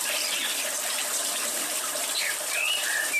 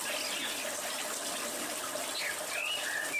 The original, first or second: second